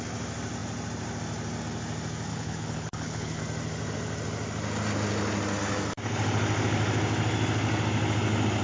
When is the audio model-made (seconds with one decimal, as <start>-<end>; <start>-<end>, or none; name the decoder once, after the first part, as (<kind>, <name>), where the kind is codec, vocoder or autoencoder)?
2.3-3.4 (codec, HILCodec)